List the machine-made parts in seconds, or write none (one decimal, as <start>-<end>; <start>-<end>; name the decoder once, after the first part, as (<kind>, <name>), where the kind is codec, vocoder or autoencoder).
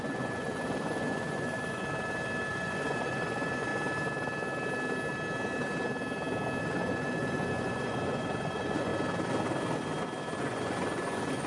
0.0-1.8 (vocoder, Vocos); 2.5-3.7; 6.6-8.9; 10.4-11.5